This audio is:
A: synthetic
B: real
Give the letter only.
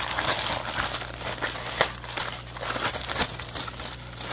A